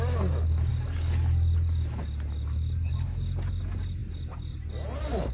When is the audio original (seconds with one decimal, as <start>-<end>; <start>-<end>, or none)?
0.0-5.3